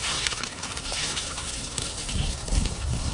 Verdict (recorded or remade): remade